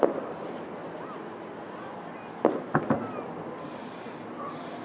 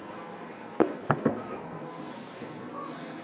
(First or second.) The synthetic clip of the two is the second